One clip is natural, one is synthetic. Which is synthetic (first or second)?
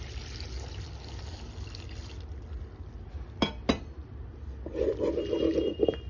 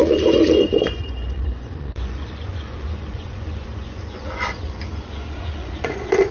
second